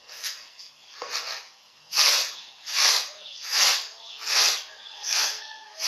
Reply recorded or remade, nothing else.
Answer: remade